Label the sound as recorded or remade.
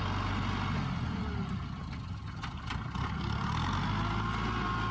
recorded